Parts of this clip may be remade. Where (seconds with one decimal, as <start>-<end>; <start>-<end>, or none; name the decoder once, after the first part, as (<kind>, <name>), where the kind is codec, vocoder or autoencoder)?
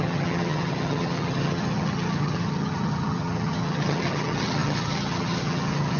0.0-6.0 (vocoder, HiFi-GAN)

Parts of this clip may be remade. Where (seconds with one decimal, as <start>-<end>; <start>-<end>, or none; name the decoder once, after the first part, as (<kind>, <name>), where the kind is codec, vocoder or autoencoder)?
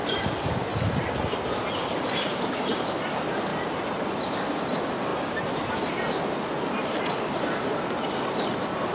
none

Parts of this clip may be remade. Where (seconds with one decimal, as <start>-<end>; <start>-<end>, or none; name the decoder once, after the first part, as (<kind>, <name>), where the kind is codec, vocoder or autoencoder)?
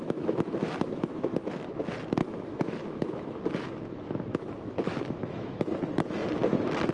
0.0-1.7 (autoencoder, DAC-VAE); 2.2-5.7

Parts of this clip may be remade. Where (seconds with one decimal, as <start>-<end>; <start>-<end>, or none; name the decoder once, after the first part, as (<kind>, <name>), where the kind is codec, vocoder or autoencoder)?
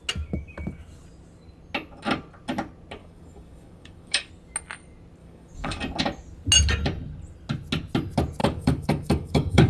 3.0-4.3 (codec, DAC); 5.2-5.8; 8.4-9.7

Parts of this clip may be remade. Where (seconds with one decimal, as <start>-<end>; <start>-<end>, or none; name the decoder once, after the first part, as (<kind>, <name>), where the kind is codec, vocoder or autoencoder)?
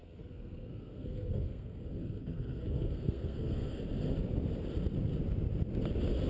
0.0-3.8 (codec, SNAC)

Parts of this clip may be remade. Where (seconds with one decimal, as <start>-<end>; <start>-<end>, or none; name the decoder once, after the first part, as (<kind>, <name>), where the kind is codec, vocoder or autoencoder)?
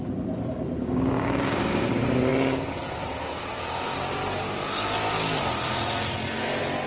0.8-1.9 (codec, DAC)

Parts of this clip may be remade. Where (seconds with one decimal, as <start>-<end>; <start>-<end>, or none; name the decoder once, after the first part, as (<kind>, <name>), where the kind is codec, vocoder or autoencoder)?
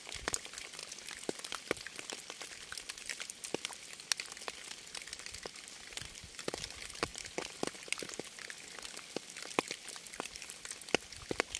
none